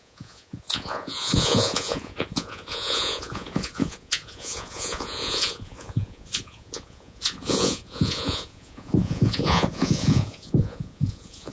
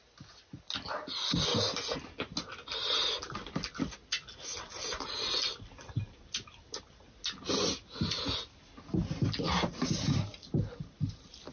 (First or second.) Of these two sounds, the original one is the second